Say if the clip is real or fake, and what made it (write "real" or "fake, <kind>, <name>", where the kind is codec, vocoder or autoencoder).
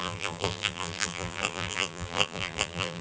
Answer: fake, vocoder, BigVGAN v2